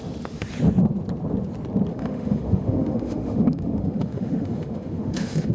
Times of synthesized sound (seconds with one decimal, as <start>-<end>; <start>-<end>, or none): 1.9-5.5